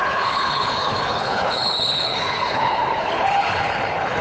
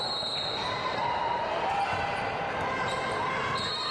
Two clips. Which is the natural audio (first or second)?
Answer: second